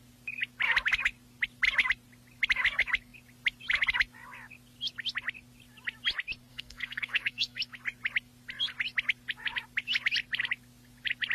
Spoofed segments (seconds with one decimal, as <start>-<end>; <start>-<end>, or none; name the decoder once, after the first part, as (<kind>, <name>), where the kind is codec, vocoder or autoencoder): 6.5-7.6 (codec, SNAC)